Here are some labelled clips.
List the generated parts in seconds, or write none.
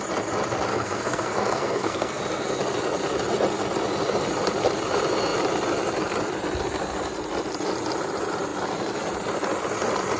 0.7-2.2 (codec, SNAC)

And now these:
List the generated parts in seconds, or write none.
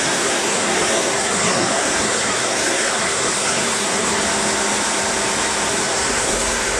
0.0-4.2 (codec, SNAC); 5.7-6.8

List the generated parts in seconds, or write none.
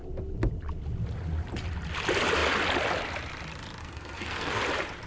3.8-4.6 (codec, SNAC)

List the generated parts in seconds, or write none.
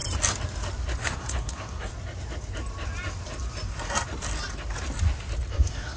1.0-1.9 (codec, SNAC); 5.5-6.0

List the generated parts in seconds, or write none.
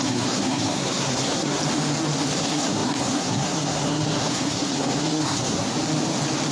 0.0-1.6 (codec, SNAC); 2.3-5.7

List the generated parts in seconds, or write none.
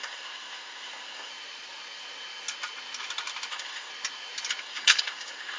0.0-1.3 (codec, SNAC); 3.5-3.9; 4.6-5.6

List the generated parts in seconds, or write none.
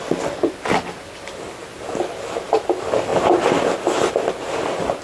none